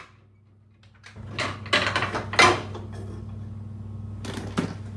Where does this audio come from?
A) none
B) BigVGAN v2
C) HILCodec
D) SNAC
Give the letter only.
A